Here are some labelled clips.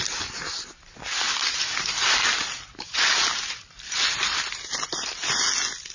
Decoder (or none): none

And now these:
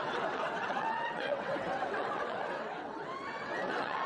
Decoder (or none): vocoder, WaveNeXt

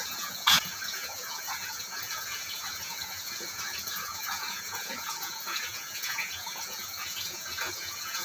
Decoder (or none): vocoder, Vocos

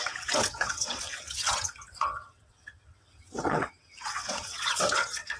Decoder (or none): vocoder, WaveNeXt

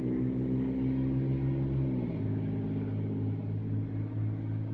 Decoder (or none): none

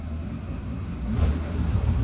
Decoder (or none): codec, SNAC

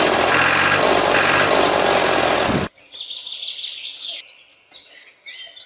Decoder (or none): none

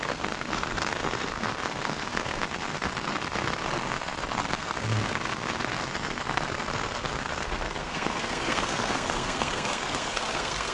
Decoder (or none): codec, SNAC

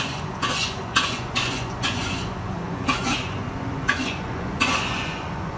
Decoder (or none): vocoder, Vocos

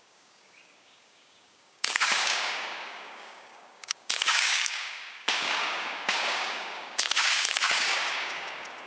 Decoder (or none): codec, DAC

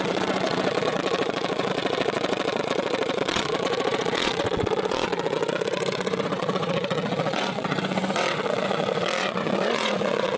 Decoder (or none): vocoder, WaveNeXt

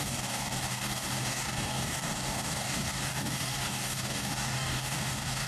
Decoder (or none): codec, DAC